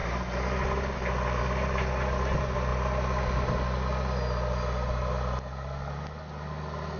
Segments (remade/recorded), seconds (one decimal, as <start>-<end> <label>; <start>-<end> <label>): 0.0-7.0 recorded